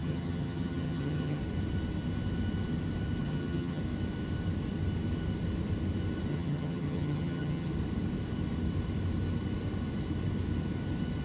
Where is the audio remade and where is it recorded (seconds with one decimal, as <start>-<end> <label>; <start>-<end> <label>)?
0.0-1.4 remade; 1.4-3.2 recorded; 3.2-3.8 remade; 3.8-6.3 recorded; 6.3-7.7 remade; 7.7-11.2 recorded